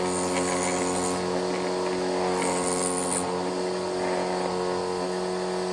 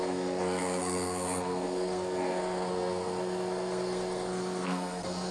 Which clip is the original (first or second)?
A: first